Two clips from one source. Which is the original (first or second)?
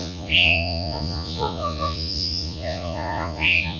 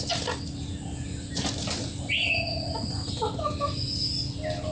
second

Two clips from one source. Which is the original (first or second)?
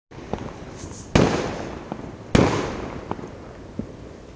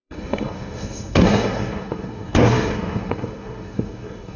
first